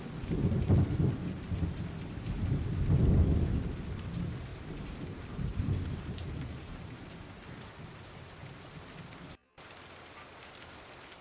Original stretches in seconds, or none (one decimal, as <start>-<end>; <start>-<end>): 0.0-4.5; 8.8-11.2